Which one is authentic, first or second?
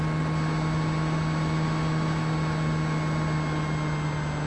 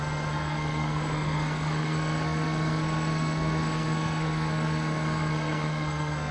first